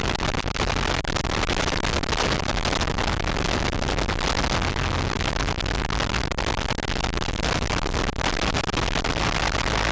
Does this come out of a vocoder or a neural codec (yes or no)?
no